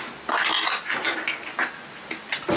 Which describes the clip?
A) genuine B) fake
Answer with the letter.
A